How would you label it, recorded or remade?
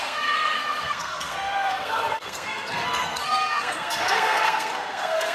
remade